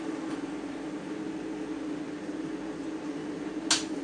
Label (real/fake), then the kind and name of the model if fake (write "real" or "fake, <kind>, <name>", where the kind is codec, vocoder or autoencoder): real